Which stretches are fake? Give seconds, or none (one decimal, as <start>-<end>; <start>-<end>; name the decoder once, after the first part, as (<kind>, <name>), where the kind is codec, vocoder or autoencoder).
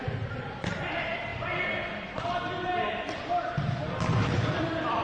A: 0.0-1.3 (vocoder, BigVGAN v2); 4.3-5.0